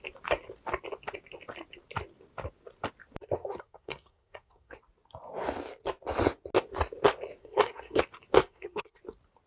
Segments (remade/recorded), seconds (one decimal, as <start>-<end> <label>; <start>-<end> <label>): 0.0-3.2 recorded; 3.2-4.8 remade; 4.8-7.4 recorded; 7.4-8.0 remade; 8.0-8.4 recorded; 8.4-9.0 remade; 9.0-9.5 recorded